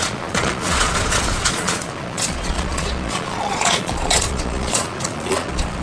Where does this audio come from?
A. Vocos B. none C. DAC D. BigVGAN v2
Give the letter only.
A